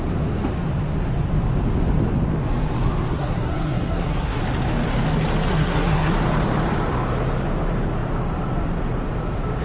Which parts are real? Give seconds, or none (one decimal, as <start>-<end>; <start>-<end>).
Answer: 0.0-3.1; 4.4-5.5; 6.1-9.6